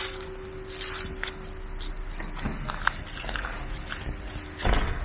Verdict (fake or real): real